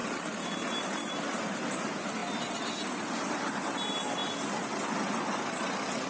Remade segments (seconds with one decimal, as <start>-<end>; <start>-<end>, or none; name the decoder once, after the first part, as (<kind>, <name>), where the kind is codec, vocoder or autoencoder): none